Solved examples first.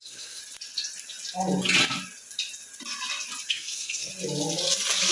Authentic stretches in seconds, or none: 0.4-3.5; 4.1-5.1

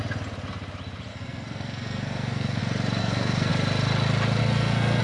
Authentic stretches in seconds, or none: 0.0-1.1; 2.6-3.0; 3.5-4.4

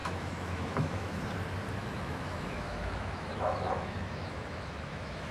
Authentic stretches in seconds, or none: 1.2-1.8

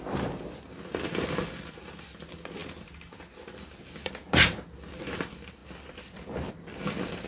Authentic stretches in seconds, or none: 0.0-7.3

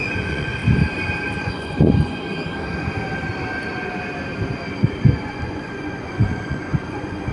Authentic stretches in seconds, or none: 0.6-1.4; 2.2-5.2

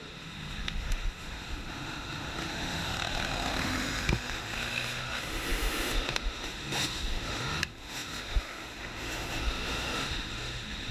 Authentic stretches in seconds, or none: none